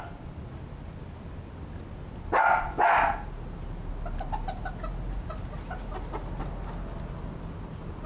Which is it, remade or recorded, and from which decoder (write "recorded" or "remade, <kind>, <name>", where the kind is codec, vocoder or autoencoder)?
recorded